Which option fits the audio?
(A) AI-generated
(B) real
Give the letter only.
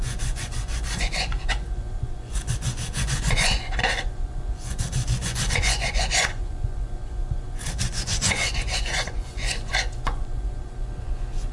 A